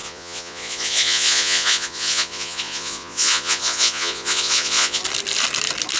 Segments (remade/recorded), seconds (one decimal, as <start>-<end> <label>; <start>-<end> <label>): 0.0-5.0 remade; 5.0-6.0 recorded